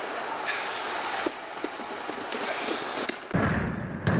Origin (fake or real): real